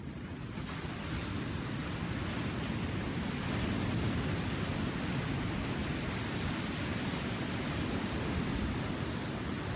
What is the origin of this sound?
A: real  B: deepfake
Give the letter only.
A